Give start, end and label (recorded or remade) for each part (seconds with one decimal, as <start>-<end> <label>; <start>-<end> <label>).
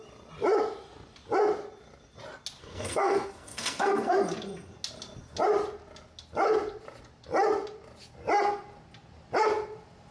0.0-2.6 recorded; 2.6-4.1 remade; 4.1-10.1 recorded